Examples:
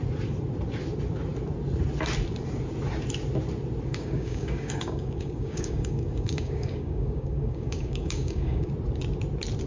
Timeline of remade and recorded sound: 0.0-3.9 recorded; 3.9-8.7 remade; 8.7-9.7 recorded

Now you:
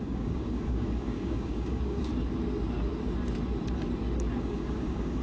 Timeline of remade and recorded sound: 0.0-2.1 remade; 2.1-4.4 recorded; 4.4-5.2 remade

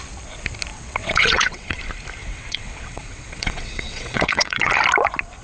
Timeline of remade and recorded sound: 0.0-0.7 recorded; 0.7-1.8 remade; 1.8-2.2 recorded; 2.2-4.7 remade; 4.7-5.4 recorded

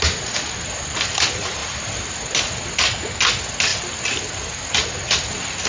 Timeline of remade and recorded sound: 0.0-5.7 recorded

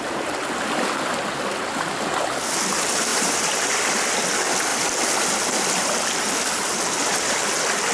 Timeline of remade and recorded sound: 0.0-3.1 recorded; 3.1-3.8 remade; 3.8-7.9 recorded

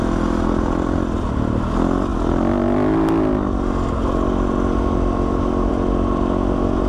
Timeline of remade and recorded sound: 0.0-6.9 recorded

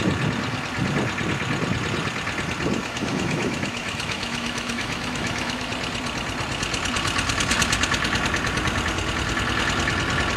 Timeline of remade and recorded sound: 0.0-2.8 recorded; 2.8-5.7 remade; 5.7-10.4 recorded